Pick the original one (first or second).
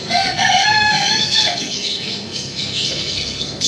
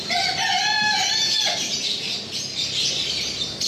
second